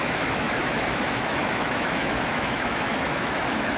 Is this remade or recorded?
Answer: remade